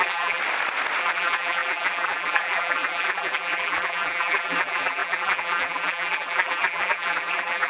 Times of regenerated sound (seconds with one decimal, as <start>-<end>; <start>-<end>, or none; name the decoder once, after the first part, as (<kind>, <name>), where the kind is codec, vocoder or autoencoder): 0.0-0.4 (vocoder, BigVGAN v2); 1.0-7.7